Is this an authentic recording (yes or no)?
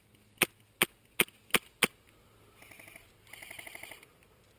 yes